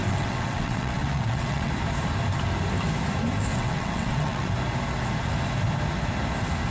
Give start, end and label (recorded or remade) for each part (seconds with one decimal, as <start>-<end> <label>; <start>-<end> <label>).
0.0-1.7 remade; 1.7-3.5 recorded; 3.5-4.5 remade; 4.5-6.7 recorded

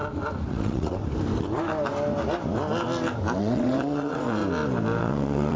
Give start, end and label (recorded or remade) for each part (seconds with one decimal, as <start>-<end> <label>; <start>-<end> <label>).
0.0-0.5 recorded; 0.5-1.0 remade; 1.0-3.4 recorded; 3.4-4.4 remade; 4.4-5.0 recorded; 5.0-5.6 remade

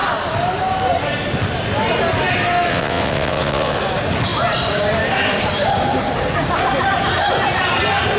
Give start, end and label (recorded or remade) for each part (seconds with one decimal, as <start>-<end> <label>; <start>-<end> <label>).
0.0-2.7 recorded; 2.7-3.8 remade; 3.8-8.2 recorded